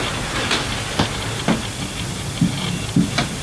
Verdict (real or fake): real